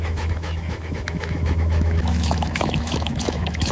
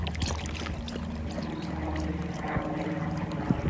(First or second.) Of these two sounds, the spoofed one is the first